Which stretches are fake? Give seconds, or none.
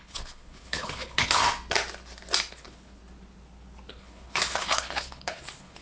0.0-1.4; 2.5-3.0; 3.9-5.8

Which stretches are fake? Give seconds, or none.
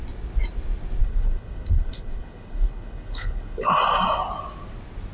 1.0-3.7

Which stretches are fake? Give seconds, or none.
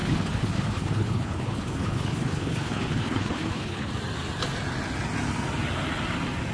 0.0-3.9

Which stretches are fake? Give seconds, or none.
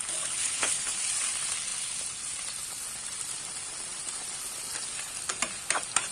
0.4-1.0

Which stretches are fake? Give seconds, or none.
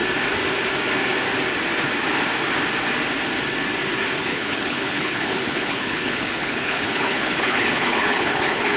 4.3-8.8